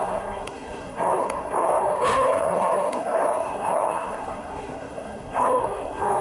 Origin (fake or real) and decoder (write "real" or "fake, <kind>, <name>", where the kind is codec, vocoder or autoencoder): fake, codec, SNAC